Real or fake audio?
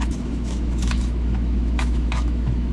fake